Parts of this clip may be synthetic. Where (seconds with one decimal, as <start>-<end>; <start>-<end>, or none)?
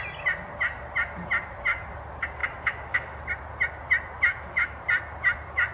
2.4-3.2; 4.3-4.8